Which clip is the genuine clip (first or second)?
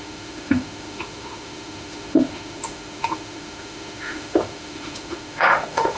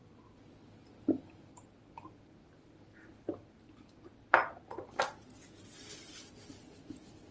second